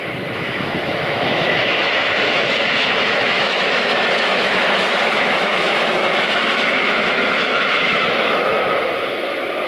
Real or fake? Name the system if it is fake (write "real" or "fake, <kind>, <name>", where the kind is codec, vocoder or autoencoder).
fake, autoencoder, DAC-VAE